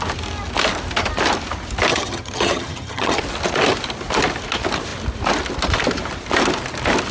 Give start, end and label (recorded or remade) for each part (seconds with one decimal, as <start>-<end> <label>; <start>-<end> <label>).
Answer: 0.0-1.9 recorded; 1.9-3.2 remade; 3.2-7.1 recorded

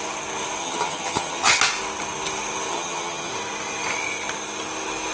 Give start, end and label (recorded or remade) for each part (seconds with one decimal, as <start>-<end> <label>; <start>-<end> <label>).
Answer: 0.0-0.6 recorded; 0.6-1.6 remade; 1.6-2.7 recorded; 2.7-3.3 remade; 3.3-5.1 recorded